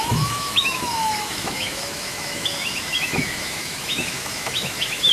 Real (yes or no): no